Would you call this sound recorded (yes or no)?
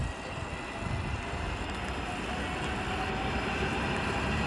yes